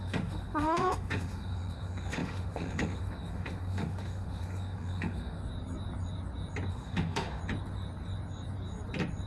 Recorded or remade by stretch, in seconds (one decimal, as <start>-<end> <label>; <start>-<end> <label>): 0.0-5.4 remade; 5.4-6.7 recorded; 6.7-7.4 remade; 7.4-9.3 recorded